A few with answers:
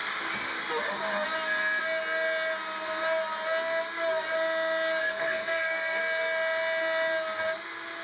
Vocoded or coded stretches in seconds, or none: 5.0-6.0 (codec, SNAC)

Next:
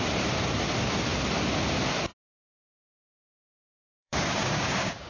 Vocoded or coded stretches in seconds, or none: 2.8-5.1 (codec, DAC)

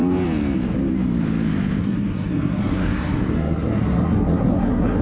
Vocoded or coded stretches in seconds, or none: 1.8-5.0 (codec, SNAC)

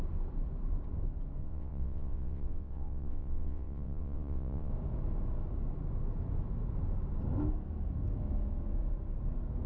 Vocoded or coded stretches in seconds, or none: 1.4-4.7 (vocoder, WaveNeXt)

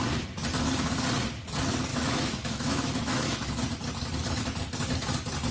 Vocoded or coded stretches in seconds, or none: 1.9-3.5 (autoencoder, DAC-VAE)

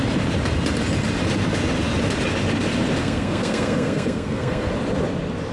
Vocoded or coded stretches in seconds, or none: 3.0-4.7 (codec, SNAC)

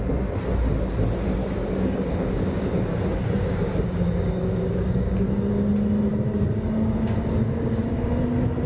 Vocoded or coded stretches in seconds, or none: 1.4-5.5 (codec, DAC); 6.1-8.2